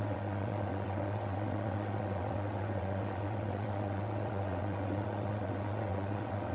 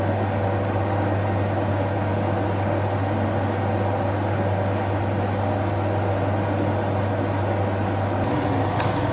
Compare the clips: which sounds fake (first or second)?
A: first